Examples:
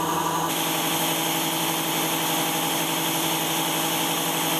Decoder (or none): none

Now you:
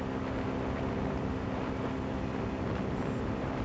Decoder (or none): none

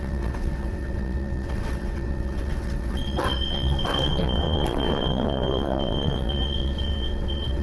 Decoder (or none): vocoder, WaveNeXt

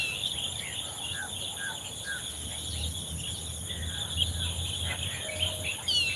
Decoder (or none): none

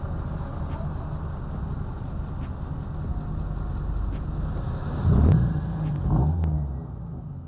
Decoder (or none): none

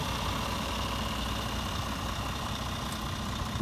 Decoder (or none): none